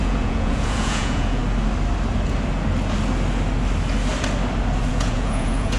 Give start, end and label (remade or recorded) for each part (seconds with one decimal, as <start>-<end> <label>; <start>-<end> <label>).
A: 0.0-1.4 remade; 1.4-4.9 recorded; 4.9-5.8 remade